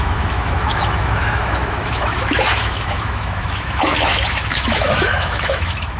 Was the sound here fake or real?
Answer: fake